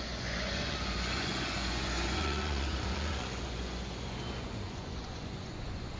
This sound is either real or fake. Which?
fake